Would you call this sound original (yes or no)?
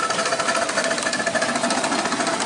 yes